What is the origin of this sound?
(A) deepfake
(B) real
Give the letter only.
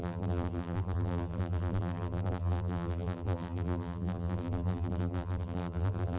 A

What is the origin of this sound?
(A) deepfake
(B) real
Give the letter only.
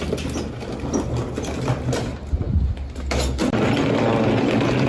B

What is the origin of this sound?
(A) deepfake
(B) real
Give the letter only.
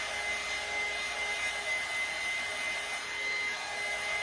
B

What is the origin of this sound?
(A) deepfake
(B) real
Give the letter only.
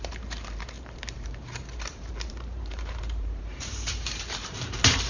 A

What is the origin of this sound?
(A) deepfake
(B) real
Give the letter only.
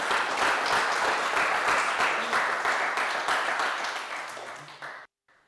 B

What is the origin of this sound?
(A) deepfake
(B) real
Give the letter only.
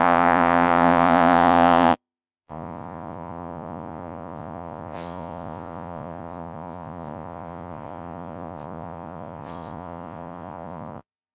A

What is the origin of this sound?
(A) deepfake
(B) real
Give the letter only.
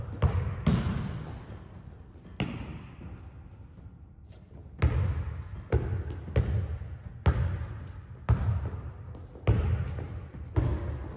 B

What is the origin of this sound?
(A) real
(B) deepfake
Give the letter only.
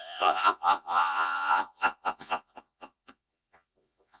B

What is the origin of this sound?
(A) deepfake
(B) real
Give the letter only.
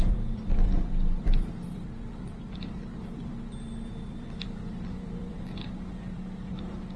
A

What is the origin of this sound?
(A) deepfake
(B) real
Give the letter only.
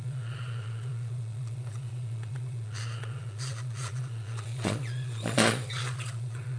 A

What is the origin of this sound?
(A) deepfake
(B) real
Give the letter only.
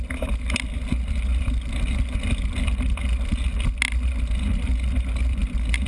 B